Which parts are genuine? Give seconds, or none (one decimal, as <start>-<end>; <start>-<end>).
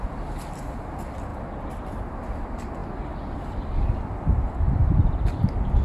0.0-5.8